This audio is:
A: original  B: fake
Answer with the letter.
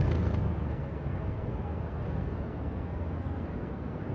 B